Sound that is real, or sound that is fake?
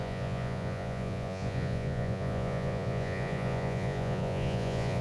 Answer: fake